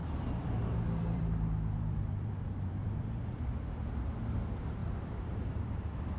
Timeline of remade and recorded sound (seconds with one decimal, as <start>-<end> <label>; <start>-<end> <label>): 0.0-3.7 remade; 3.7-4.8 recorded; 4.8-6.2 remade